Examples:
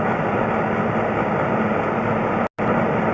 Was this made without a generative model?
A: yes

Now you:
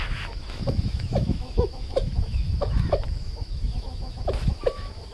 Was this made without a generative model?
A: no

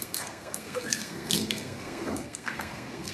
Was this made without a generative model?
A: no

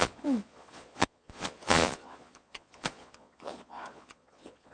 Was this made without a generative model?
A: no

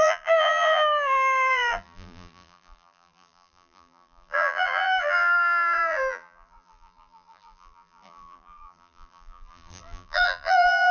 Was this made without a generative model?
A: no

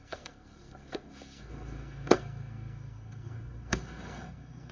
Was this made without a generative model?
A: no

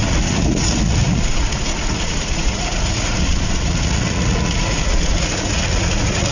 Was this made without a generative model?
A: no